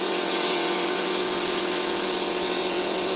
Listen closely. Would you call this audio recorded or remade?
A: remade